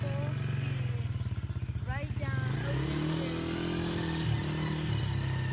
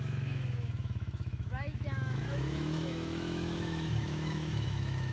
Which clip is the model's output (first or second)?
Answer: second